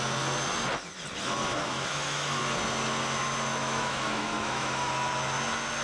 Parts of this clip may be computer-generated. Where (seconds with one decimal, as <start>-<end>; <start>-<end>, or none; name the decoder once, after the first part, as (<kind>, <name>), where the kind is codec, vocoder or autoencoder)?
1.5-2.4 (autoencoder, DAC-VAE); 3.6-4.9